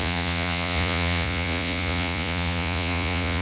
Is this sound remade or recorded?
remade